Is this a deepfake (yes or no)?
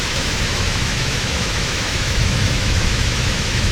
yes